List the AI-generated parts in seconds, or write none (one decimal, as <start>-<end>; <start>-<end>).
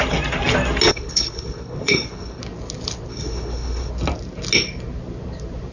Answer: 0.9-2.4; 3.1-3.9